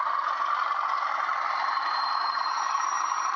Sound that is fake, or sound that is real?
real